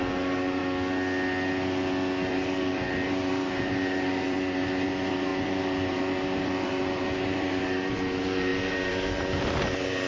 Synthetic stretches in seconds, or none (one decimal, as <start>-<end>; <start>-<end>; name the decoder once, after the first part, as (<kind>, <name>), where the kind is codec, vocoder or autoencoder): 0.0-0.6 (vocoder, BigVGAN v2); 2.3-10.1